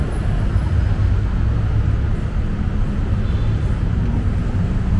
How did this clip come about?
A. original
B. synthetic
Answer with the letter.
A